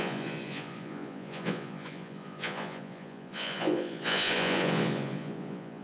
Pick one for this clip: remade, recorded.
remade